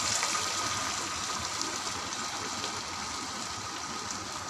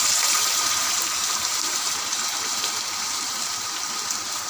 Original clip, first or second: first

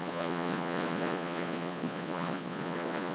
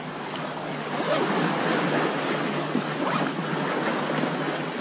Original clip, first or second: second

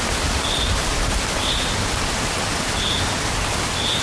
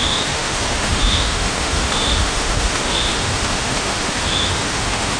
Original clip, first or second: first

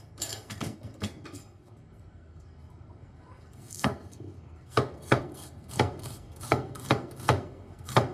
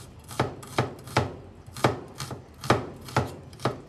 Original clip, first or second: second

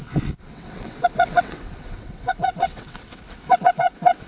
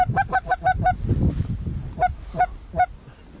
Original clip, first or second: second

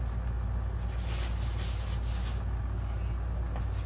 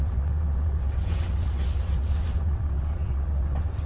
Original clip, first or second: first